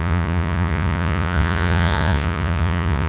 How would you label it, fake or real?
fake